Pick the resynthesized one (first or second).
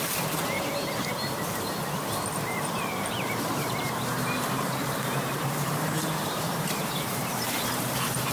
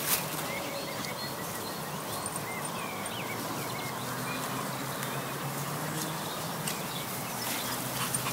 first